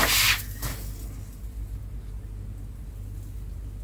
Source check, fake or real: real